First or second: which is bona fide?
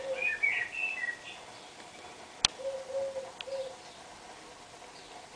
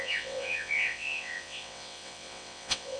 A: first